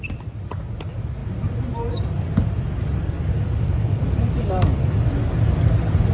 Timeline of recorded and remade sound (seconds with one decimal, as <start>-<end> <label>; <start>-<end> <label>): 0.0-2.9 recorded; 2.9-5.1 remade; 5.1-6.1 recorded